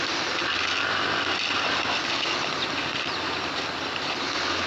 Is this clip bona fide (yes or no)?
yes